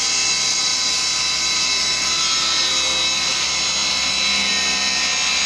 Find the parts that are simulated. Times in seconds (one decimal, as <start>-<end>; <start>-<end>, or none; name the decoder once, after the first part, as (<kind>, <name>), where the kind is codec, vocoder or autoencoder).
none